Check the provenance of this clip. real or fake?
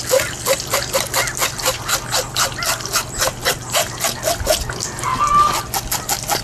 real